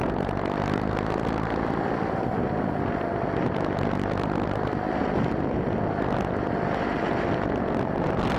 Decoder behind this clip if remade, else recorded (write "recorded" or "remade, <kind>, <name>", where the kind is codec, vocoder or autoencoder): recorded